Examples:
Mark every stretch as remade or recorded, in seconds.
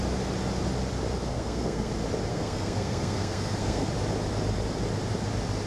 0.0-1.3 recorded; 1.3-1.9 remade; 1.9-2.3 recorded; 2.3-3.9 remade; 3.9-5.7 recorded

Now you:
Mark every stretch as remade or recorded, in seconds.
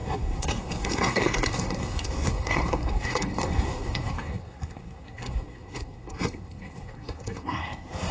0.0-8.1 remade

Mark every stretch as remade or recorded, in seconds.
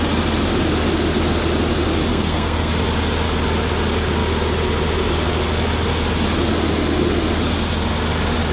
0.0-2.1 recorded; 2.1-2.7 remade; 2.7-8.5 recorded